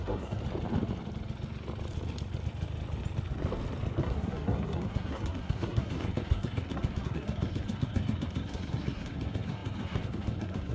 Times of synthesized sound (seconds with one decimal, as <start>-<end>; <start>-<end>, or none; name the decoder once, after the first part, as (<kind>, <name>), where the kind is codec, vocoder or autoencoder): 0.0-0.4 (codec, SNAC); 4.0-10.7